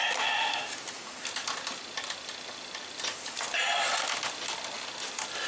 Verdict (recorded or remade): recorded